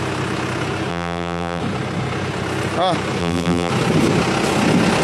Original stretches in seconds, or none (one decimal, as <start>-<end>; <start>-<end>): 0.0-0.9; 1.6-3.2; 3.7-5.0

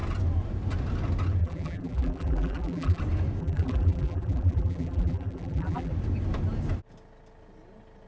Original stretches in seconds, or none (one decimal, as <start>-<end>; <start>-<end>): 0.0-1.4; 3.0-3.4; 5.9-8.1

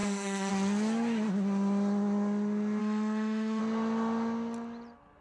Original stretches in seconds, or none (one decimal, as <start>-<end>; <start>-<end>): 0.5-2.8; 3.6-5.2

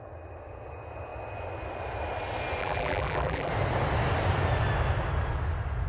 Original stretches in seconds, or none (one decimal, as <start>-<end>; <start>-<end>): 0.0-2.6; 3.5-5.9

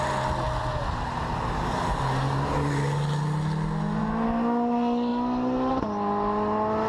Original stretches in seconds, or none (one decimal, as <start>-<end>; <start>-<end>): 0.0-6.9

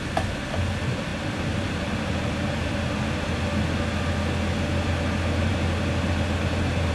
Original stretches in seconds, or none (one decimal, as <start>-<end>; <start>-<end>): 0.0-6.9

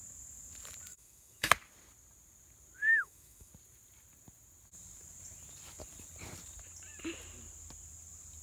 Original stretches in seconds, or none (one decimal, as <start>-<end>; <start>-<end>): 0.0-0.9; 1.5-2.9; 3.5-8.4